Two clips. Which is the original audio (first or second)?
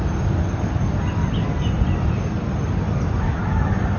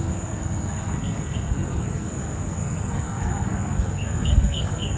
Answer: first